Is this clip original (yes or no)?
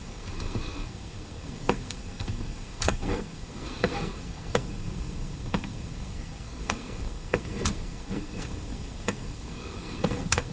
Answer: no